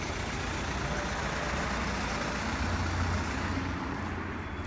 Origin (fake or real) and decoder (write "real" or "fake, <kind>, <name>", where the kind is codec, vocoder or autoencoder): real